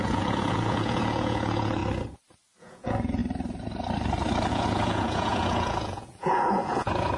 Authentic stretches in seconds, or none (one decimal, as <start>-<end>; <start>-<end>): 1.8-2.6; 3.2-4.5

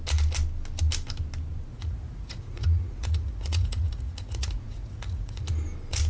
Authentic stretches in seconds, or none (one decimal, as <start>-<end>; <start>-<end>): 0.0-1.7; 5.4-6.1